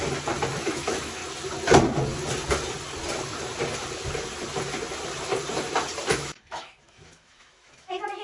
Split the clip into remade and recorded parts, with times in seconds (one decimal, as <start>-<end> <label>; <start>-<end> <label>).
0.0-0.5 recorded; 0.5-1.2 remade; 1.2-6.1 recorded; 6.1-8.2 remade